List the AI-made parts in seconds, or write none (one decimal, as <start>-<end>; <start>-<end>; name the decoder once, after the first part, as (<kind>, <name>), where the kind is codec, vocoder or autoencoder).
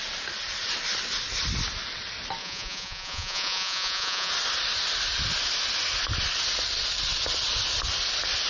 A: 2.4-4.3 (vocoder, Vocos)